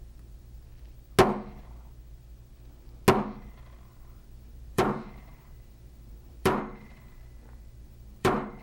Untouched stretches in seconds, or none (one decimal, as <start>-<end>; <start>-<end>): 0.7-3.8

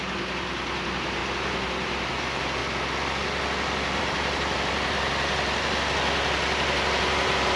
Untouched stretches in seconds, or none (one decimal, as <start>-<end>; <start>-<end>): 2.6-4.0; 5.3-7.0

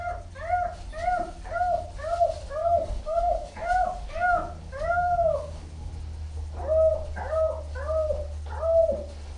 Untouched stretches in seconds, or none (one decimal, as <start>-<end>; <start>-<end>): 0.0-2.6; 5.9-9.4

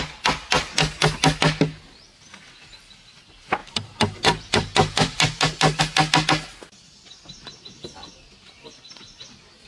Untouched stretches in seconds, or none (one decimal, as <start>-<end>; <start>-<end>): 0.0-3.6; 5.8-9.7

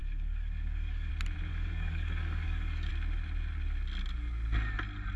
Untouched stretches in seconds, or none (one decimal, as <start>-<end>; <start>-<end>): 1.1-1.5; 2.9-5.2

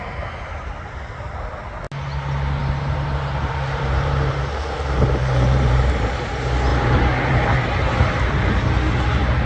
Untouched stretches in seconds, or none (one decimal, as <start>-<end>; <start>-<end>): 0.0-2.6; 6.3-6.7; 8.1-9.5

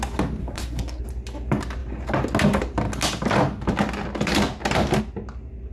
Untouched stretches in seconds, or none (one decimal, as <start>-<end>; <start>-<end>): 0.0-0.4; 1.0-5.7